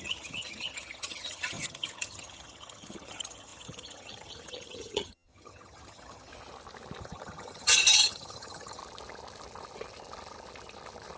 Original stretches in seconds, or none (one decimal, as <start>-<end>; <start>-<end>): 6.3-7.0; 8.8-11.2